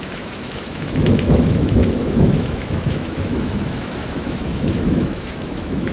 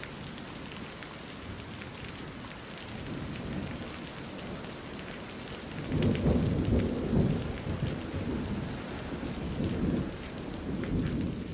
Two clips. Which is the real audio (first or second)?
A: second